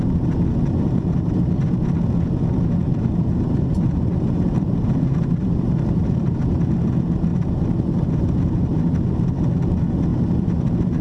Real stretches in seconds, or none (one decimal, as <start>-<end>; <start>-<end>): 0.0-2.9; 6.6-10.1